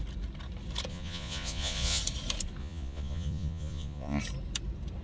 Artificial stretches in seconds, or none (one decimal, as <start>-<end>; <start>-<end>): 0.9-2.0; 2.6-4.2